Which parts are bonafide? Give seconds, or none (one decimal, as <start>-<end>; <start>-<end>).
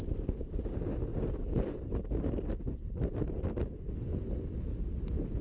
0.0-5.4